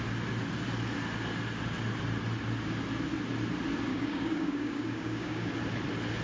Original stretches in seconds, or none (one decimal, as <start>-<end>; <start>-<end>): 0.0-3.9; 5.5-6.2